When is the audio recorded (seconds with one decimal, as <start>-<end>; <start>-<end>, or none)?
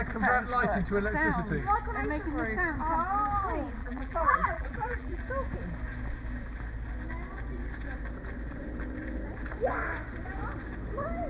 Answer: 0.0-3.8; 5.2-11.3